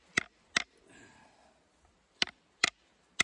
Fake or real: real